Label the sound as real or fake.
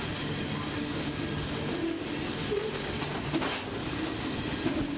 real